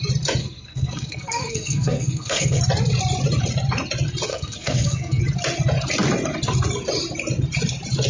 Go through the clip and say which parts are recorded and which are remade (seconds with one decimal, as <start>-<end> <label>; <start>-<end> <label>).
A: 0.0-0.4 recorded; 0.4-2.6 remade; 2.6-4.3 recorded; 4.3-5.2 remade; 5.2-8.1 recorded